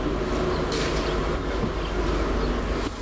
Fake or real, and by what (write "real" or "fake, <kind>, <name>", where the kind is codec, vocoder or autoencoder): real